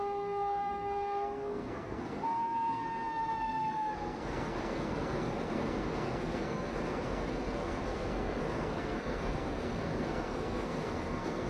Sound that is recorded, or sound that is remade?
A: remade